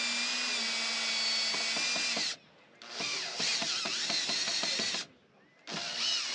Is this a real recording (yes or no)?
yes